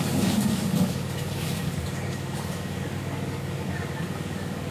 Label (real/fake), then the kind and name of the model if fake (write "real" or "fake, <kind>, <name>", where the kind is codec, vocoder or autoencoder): fake, codec, DAC